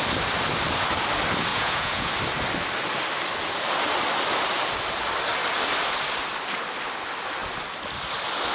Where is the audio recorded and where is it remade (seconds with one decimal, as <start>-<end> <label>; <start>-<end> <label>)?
0.0-1.5 recorded; 1.5-2.1 remade; 2.1-8.5 recorded